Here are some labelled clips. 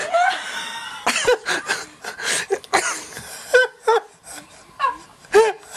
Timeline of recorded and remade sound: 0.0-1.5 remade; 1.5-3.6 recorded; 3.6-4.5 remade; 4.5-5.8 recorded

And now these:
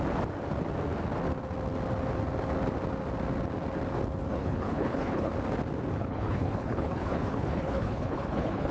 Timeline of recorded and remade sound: 0.0-4.3 recorded; 4.3-5.3 remade; 5.3-6.0 recorded; 6.0-8.7 remade

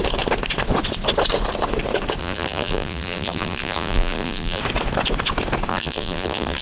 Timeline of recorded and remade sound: 0.0-2.2 recorded; 2.2-4.6 remade; 4.6-5.7 recorded; 5.7-6.6 remade